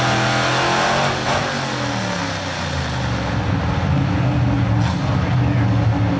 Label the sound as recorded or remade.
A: recorded